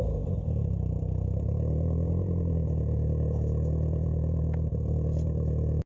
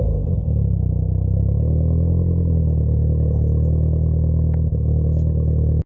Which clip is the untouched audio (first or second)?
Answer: second